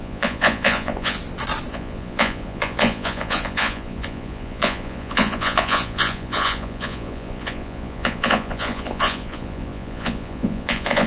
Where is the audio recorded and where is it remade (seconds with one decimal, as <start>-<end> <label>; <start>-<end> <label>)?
0.0-1.2 remade; 1.2-1.7 recorded; 1.7-11.1 remade